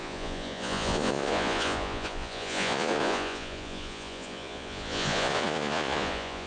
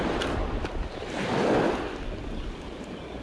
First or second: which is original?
second